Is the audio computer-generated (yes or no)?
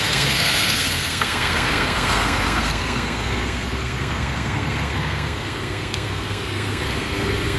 yes